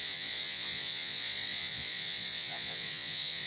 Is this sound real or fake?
fake